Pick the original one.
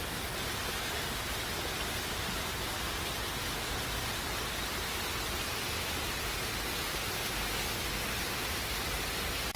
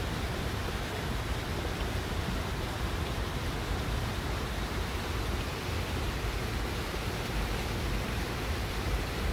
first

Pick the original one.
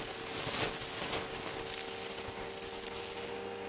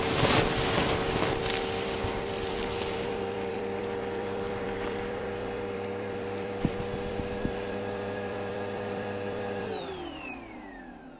first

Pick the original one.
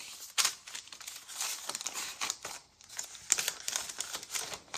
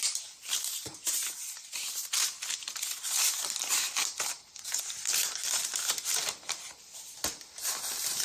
first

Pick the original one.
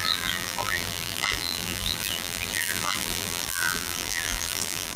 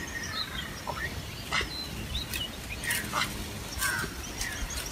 second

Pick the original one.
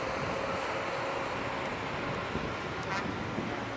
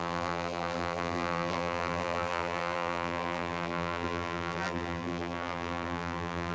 first